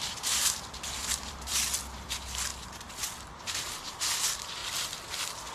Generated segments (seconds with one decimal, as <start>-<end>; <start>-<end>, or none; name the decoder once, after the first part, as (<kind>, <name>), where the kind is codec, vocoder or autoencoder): 0.0-2.5 (vocoder, BigVGAN v2); 3.3-4.6